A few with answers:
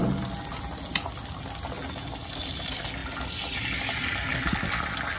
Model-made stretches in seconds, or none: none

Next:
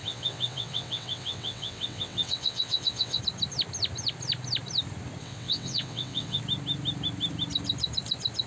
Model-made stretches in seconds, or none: 0.0-3.2 (vocoder, WaveNeXt); 5.2-6.4

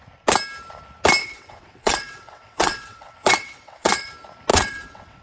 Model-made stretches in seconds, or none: 1.2-4.1 (vocoder, WaveNeXt); 4.5-5.2

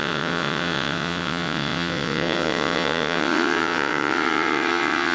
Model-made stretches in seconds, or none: 0.0-5.1 (vocoder, WaveNeXt)

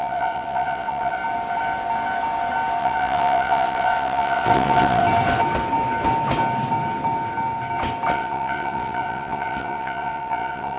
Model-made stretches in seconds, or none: 0.0-1.2 (vocoder, WaveNeXt); 2.8-5.0; 8.1-10.8

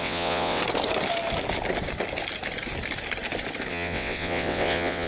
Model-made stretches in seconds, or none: 0.0-0.6 (vocoder, WaveNeXt); 3.7-5.1

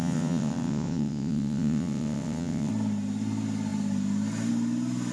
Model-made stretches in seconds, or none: 0.0-2.7 (vocoder, WaveNeXt)